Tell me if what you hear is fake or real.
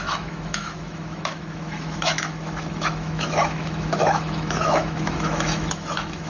fake